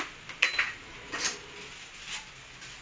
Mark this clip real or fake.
real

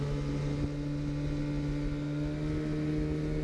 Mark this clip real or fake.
real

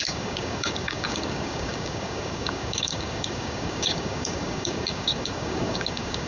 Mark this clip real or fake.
fake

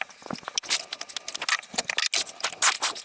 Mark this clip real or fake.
real